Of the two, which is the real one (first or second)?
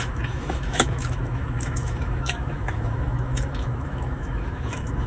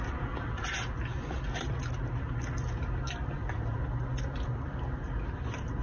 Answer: second